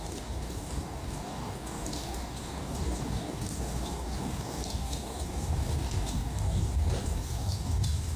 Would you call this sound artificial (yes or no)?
yes